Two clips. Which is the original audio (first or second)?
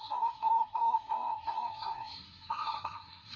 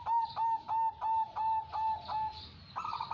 second